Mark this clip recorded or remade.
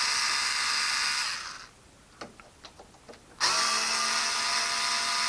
recorded